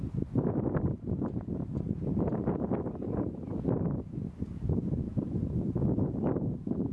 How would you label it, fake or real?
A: real